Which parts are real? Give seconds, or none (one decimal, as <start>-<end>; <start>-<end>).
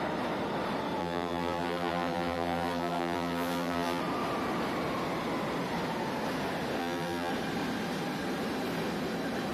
0.0-1.0; 4.0-6.8; 7.3-9.5